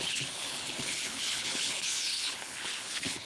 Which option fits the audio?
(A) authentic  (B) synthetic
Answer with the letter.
B